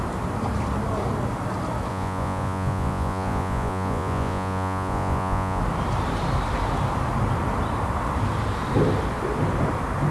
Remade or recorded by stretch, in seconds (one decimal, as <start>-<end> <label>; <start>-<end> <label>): 0.0-1.9 recorded; 1.9-5.6 remade; 5.6-10.1 recorded